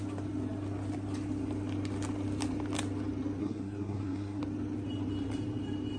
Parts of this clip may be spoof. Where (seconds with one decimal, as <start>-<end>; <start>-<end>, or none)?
3.4-4.4